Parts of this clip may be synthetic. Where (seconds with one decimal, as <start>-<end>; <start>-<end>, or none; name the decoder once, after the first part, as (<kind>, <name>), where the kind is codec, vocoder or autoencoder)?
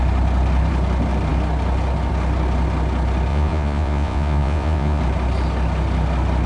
3.3-5.0 (vocoder, Vocos)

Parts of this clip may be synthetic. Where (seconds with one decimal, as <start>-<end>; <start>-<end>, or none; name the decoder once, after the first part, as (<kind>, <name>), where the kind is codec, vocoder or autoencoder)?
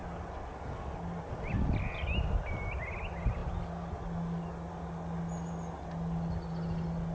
none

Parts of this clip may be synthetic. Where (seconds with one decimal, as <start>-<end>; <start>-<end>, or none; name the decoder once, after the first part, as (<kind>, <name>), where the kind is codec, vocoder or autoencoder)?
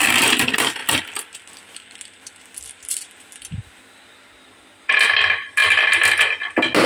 0.8-4.9 (vocoder, BigVGAN v2)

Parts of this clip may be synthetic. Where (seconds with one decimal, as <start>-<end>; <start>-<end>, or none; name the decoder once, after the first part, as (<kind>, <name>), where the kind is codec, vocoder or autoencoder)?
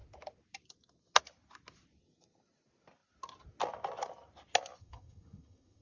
4.8-5.8 (vocoder, HiFi-GAN)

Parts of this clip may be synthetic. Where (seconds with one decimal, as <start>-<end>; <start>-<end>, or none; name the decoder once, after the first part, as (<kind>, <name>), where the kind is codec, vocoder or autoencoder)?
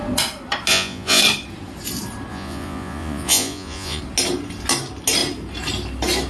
0.7-1.2 (vocoder, Vocos); 2.3-4.0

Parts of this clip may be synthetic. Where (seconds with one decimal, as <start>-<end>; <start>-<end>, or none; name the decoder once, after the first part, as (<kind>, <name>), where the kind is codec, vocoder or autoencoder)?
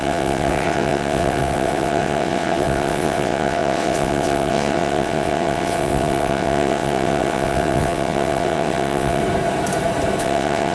0.0-9.2 (vocoder, WaveNeXt); 10.2-10.7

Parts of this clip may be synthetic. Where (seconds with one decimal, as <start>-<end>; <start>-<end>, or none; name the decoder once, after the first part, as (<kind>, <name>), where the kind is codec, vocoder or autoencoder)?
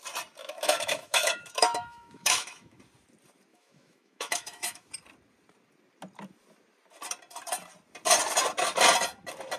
0.4-2.8 (autoencoder, DAC-VAE); 3.5-4.9